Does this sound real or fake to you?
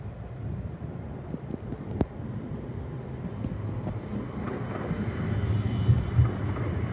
real